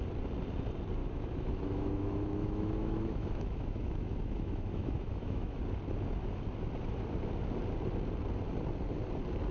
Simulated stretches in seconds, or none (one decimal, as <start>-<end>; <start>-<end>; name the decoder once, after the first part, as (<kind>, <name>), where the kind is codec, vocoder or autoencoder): 1.0-5.6 (autoencoder, DAC-VAE)